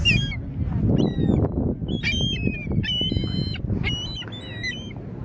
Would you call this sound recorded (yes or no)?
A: yes